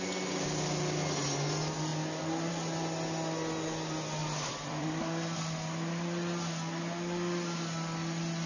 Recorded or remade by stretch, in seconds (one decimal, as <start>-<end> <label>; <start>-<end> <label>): 0.0-4.2 recorded; 4.2-5.0 remade; 5.0-8.5 recorded